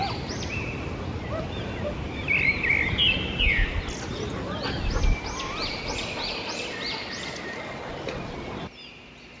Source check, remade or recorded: recorded